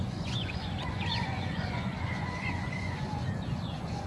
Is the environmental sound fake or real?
fake